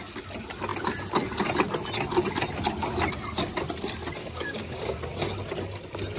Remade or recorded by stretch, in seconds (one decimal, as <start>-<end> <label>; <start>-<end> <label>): 0.0-4.2 recorded; 4.2-5.0 remade; 5.0-6.2 recorded

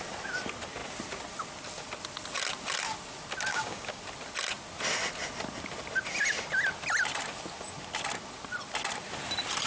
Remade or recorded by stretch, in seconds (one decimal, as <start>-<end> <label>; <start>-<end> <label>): 0.0-3.5 recorded; 3.5-4.0 remade; 4.0-9.7 recorded